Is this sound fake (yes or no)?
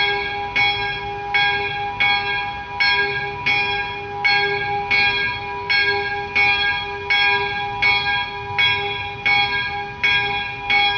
no